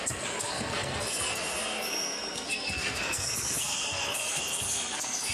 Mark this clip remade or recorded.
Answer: remade